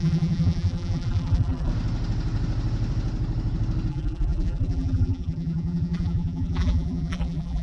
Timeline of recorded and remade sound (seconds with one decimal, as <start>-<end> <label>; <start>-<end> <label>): 0.0-1.7 remade; 1.7-3.9 recorded; 3.9-7.6 remade